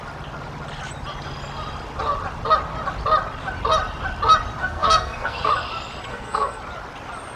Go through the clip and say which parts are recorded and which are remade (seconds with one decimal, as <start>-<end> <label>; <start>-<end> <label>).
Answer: 0.0-4.6 recorded; 4.6-5.5 remade; 5.5-6.1 recorded; 6.1-6.6 remade; 6.6-7.4 recorded